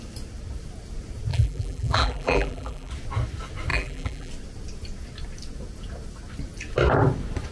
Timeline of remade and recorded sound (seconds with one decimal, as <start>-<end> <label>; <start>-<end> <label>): 0.0-1.3 recorded; 1.3-2.9 remade; 2.9-3.7 recorded; 3.7-4.3 remade; 4.3-7.5 recorded